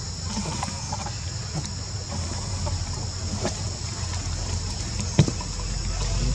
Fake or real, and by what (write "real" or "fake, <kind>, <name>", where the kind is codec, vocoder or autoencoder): real